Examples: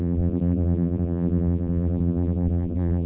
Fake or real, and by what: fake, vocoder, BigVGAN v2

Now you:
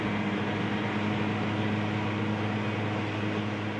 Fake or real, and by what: real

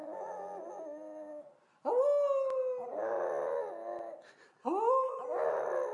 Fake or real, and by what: real